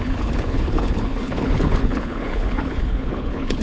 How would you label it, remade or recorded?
remade